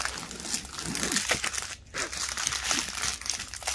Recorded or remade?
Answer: recorded